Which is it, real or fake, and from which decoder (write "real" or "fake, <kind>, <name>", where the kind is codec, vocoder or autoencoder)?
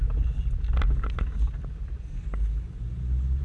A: real